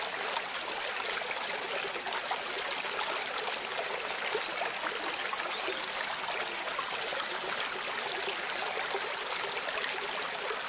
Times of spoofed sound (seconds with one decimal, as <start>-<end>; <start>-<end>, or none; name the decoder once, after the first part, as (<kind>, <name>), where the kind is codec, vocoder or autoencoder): none